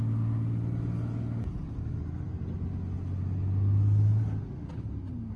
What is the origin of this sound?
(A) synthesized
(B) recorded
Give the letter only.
B